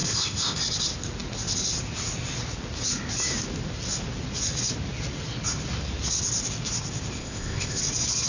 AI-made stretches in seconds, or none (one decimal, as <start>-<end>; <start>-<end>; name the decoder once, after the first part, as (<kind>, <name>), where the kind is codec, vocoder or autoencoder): 0.0-0.6 (codec, ZipCodec); 7.2-7.8